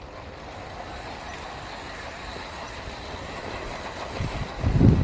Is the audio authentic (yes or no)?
yes